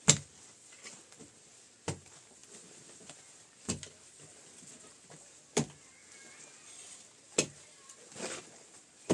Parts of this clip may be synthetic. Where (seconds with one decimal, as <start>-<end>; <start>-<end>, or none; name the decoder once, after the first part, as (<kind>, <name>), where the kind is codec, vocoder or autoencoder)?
none